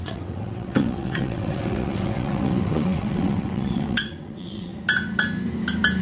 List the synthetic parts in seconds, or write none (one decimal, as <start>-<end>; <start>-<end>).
0.0-4.7